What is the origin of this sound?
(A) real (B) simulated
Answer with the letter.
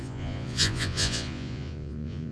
B